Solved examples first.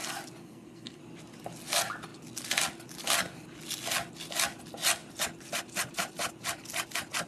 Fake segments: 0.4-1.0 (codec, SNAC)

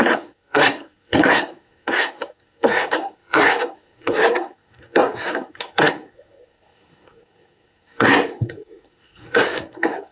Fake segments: 0.0-10.1 (codec, SNAC)

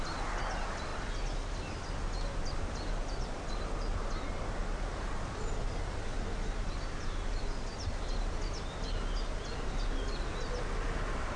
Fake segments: none

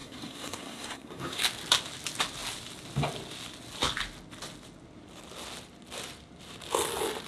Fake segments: 0.0-1.4 (codec, SNAC)

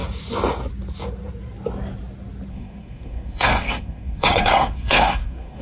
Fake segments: 2.5-5.6 (codec, SNAC)

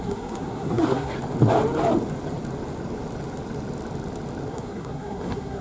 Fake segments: 0.0-1.1 (codec, SNAC); 4.5-5.6

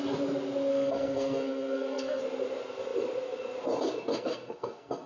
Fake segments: 0.7-2.2 (codec, SNAC); 4.1-5.1